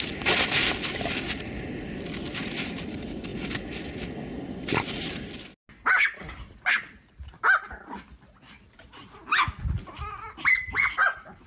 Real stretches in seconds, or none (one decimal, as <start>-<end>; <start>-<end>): 0.0-11.5

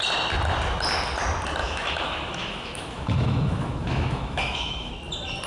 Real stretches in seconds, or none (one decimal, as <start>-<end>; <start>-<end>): 0.0-1.6; 4.9-5.5

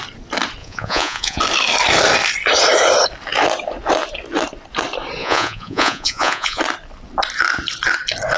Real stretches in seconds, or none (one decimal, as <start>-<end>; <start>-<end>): 0.0-0.6; 1.4-5.2; 6.6-8.4

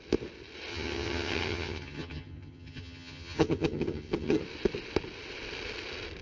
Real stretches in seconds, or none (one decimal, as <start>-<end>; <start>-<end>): 0.0-0.7; 4.4-6.2

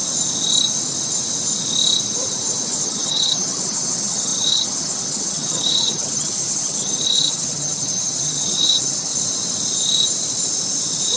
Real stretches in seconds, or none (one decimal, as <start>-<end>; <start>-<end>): 0.0-2.7; 9.1-11.2

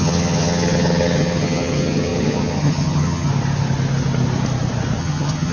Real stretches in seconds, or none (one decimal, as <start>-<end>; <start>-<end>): 3.3-5.0

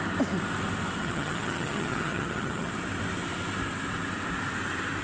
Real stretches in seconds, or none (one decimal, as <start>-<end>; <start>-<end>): 0.0-1.0; 2.7-5.0

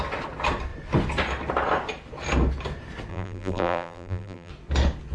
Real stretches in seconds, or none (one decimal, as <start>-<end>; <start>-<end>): 0.0-3.1; 4.5-5.1